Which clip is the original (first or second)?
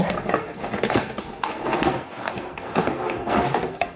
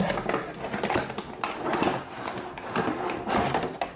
second